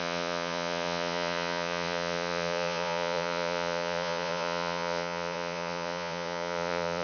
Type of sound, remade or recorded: remade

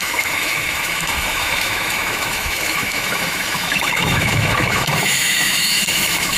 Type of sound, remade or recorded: remade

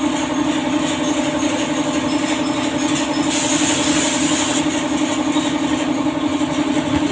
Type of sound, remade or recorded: recorded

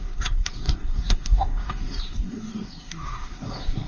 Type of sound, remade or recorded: remade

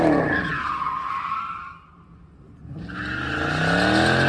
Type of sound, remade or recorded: recorded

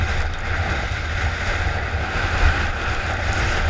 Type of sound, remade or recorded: recorded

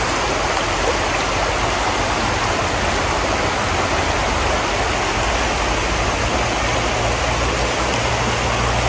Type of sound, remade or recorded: recorded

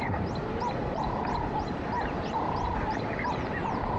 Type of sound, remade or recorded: recorded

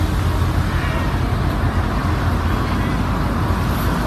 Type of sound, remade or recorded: recorded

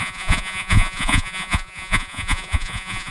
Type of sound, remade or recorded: remade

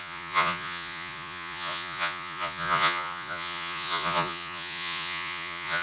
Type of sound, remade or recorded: remade